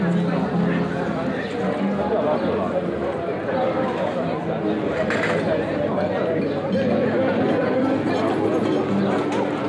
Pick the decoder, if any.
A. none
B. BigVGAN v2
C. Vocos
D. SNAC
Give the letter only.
A